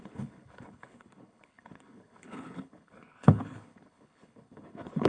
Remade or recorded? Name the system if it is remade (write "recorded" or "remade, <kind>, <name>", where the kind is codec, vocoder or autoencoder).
remade, codec, HILCodec